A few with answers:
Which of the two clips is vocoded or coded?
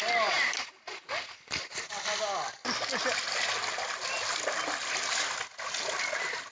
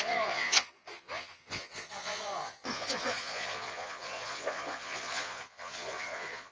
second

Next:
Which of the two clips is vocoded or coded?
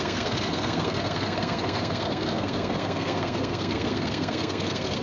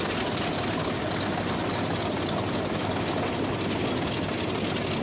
first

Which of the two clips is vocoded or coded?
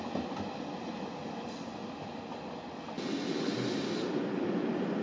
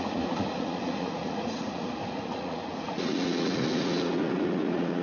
second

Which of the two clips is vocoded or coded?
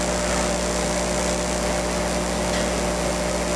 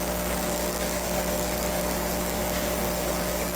second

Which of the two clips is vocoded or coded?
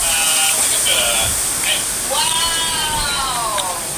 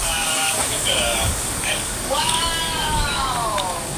second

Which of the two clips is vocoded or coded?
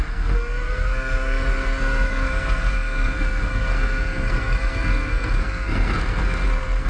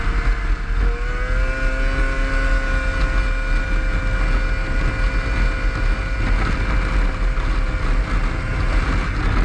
first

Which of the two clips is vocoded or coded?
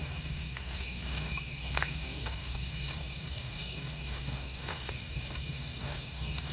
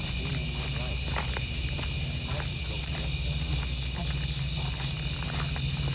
first